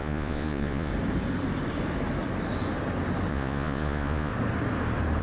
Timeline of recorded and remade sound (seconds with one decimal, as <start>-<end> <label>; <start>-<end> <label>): 0.0-0.9 remade; 0.9-3.3 recorded; 3.3-4.3 remade; 4.3-5.2 recorded